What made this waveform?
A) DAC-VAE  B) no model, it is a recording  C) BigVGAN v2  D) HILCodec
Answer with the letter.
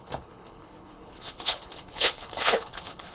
D